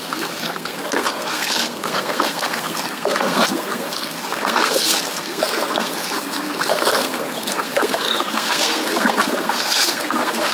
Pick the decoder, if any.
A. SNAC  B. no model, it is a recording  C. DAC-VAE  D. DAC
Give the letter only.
A